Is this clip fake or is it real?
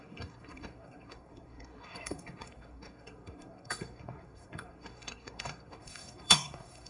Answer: fake